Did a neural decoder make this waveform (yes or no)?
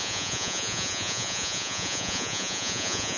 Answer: yes